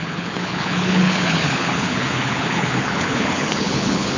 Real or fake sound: fake